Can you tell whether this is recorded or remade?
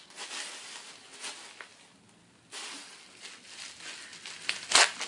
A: recorded